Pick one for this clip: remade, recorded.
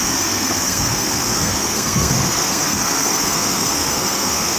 remade